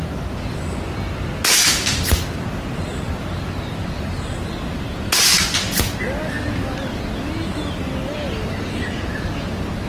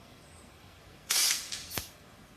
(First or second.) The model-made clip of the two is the second